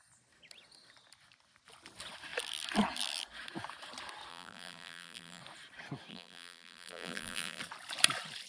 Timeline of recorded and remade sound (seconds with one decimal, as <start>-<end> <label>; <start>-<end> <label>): 0.0-4.3 recorded; 4.3-5.4 remade; 5.4-6.1 recorded; 6.1-7.6 remade; 7.6-8.5 recorded